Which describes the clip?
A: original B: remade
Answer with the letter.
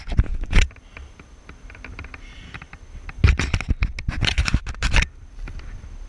A